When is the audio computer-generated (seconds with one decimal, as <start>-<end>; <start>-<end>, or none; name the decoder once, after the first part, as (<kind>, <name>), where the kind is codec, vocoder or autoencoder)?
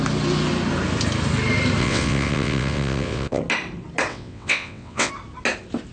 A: 1.8-3.4 (vocoder, WaveNeXt); 4.1-5.1